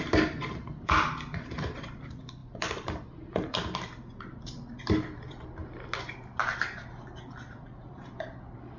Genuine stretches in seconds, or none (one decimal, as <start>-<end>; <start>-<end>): 5.6-6.4